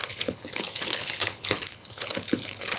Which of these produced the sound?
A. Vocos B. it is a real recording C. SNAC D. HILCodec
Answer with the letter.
D